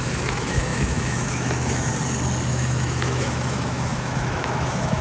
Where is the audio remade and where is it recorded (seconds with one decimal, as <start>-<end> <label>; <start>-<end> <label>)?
0.0-1.9 remade; 1.9-2.5 recorded; 2.5-5.0 remade